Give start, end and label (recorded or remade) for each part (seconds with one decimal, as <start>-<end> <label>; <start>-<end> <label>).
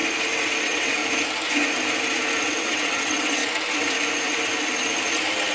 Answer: 0.0-0.6 recorded; 0.6-1.0 remade; 1.0-2.4 recorded; 2.4-3.4 remade; 3.4-5.5 recorded